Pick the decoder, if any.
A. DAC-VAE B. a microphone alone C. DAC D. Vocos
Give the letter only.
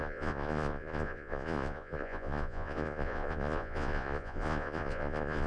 D